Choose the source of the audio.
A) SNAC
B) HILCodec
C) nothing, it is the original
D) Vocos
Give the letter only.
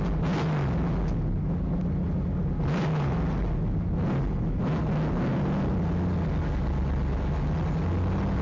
C